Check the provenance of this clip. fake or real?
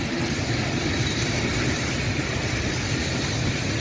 real